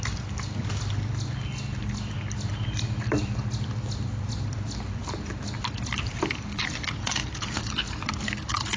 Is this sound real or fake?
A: fake